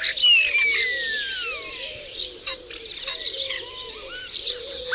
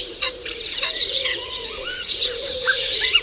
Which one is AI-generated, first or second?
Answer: second